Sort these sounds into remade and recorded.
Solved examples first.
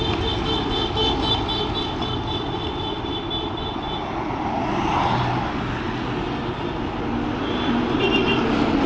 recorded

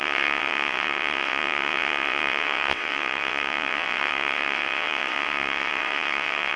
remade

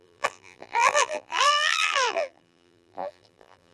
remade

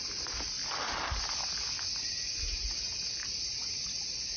recorded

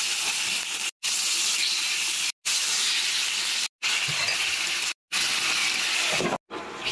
recorded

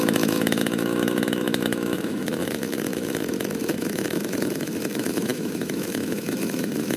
remade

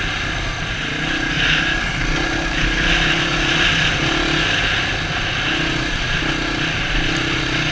recorded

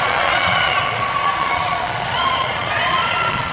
remade